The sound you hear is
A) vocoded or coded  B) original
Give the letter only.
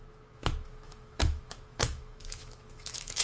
A